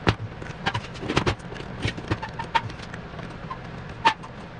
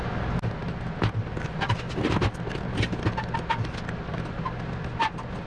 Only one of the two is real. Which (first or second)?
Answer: second